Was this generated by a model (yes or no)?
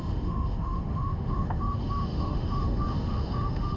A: yes